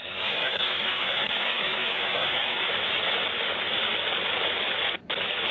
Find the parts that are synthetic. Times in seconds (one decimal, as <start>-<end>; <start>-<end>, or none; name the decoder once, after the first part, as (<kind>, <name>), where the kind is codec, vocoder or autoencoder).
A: 0.0-2.7 (codec, SNAC)